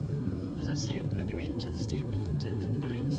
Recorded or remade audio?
remade